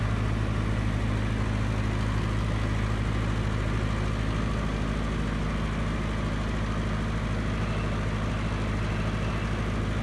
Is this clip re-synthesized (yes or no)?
no